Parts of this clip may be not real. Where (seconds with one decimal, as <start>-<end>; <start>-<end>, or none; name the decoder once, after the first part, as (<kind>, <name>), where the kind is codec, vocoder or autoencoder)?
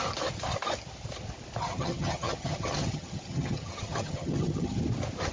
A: 1.6-4.8 (vocoder, HiFi-GAN)